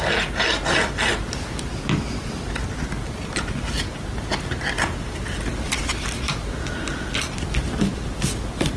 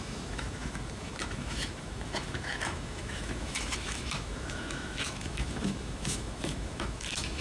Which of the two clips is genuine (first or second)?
first